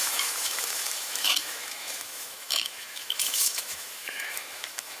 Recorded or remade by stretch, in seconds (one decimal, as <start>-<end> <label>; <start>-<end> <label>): 0.0-5.0 remade